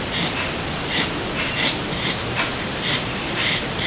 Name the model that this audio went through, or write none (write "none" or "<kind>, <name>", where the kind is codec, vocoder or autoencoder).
none